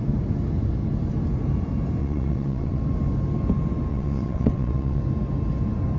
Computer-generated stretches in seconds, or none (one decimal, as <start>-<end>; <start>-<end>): 2.0-2.8; 3.9-5.0